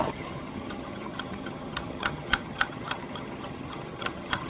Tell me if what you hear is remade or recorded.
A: remade